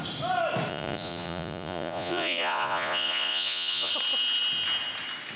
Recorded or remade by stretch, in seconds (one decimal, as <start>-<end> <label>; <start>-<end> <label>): 0.0-0.7 recorded; 0.7-3.9 remade; 3.9-5.4 recorded